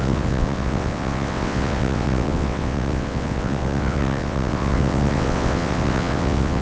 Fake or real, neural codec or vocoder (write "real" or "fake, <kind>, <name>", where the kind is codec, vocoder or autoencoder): fake, vocoder, WaveNeXt